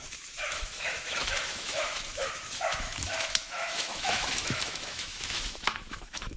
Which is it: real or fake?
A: fake